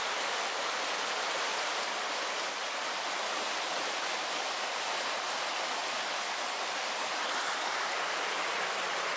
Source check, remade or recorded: recorded